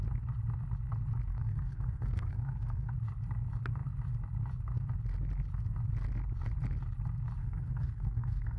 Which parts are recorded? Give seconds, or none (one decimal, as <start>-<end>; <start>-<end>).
0.0-1.3; 2.9-7.4